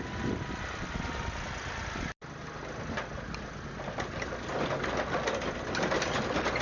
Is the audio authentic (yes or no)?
yes